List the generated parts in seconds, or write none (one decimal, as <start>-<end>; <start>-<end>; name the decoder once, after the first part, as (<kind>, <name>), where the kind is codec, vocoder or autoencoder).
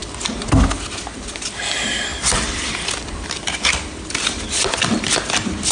2.1-5.1 (vocoder, BigVGAN v2)